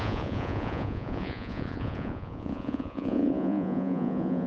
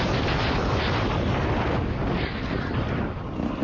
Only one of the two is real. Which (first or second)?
second